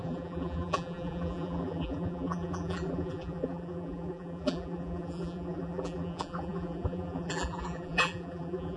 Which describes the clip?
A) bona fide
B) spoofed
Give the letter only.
B